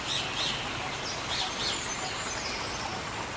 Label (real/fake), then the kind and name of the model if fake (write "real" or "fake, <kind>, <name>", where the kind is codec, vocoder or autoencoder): real